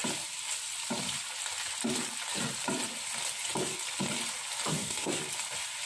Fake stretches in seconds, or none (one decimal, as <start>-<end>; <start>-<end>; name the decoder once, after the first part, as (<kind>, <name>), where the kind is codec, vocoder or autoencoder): 4.7-5.2 (codec, SNAC)